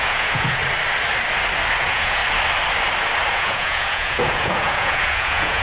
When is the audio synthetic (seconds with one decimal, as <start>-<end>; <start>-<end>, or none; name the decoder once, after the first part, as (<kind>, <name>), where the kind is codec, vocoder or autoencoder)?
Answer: 0.0-0.6 (vocoder, Vocos); 1.8-2.2; 3.3-5.6